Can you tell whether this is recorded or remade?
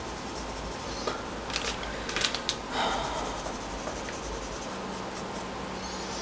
recorded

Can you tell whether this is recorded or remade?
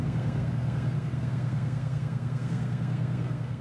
remade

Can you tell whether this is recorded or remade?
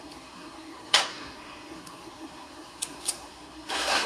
remade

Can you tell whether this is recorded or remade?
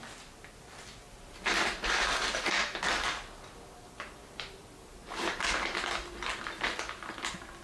recorded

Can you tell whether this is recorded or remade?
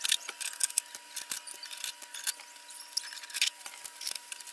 recorded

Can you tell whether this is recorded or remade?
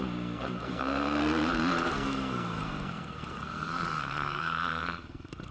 remade